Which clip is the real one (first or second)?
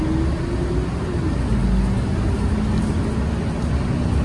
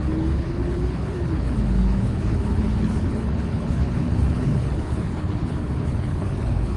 first